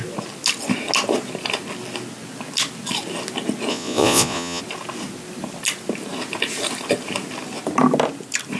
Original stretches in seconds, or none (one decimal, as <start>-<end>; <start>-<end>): 0.0-3.7; 4.6-8.6